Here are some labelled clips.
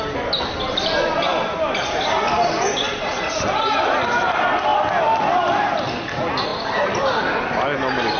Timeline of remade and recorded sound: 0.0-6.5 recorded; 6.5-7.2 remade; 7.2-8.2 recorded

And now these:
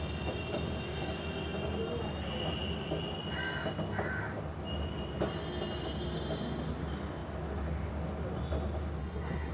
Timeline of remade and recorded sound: 0.0-9.0 recorded; 9.0-9.5 remade

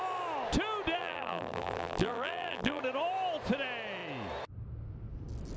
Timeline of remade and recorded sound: 0.0-1.0 recorded; 1.0-2.8 remade; 2.8-5.6 recorded

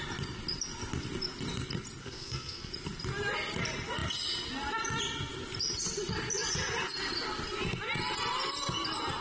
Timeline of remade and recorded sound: 0.0-2.0 recorded; 2.0-2.7 remade; 2.7-9.2 recorded

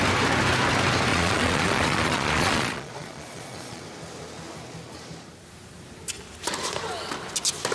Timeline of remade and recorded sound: 0.0-1.1 recorded; 1.1-3.8 remade; 3.8-7.7 recorded